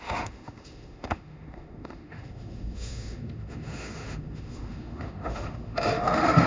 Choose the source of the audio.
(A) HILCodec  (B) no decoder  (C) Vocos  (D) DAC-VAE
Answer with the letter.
D